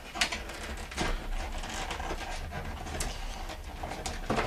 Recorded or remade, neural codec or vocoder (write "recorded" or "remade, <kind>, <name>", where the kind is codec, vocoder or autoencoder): recorded